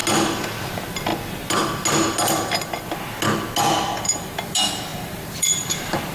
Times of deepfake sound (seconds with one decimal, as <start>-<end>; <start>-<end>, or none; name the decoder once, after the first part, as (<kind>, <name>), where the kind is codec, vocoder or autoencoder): 0.6-1.1 (vocoder, BigVGAN v2); 4.0-6.1